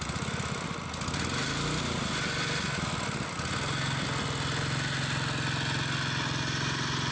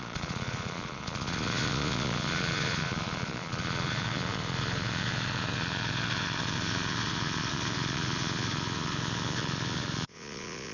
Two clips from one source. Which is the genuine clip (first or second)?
first